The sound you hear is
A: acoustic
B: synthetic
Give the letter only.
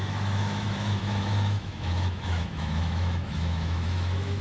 B